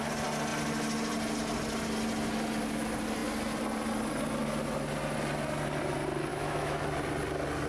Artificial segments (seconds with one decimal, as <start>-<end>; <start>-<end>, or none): 6.3-6.8